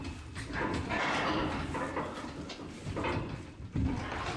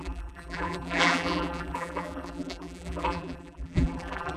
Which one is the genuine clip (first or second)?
first